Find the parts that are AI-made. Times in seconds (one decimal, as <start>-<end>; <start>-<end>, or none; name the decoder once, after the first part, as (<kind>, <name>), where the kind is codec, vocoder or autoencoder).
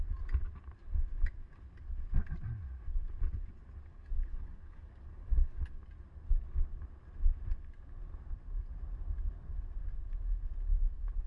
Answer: 3.9-5.6 (codec, DAC)